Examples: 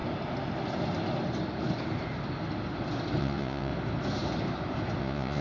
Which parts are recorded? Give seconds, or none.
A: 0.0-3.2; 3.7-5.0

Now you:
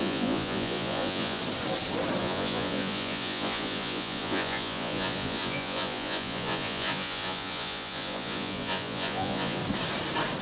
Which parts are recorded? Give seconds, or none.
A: 1.4-2.2; 9.6-10.4

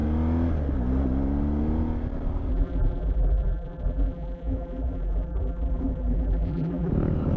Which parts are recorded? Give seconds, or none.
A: 0.0-2.5; 6.9-7.4

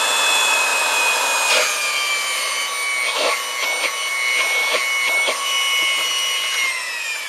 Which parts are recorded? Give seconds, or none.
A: 0.0-7.3

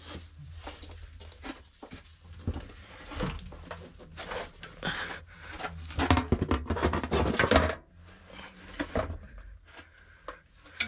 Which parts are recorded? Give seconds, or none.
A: 0.0-10.9